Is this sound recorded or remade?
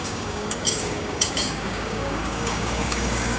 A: remade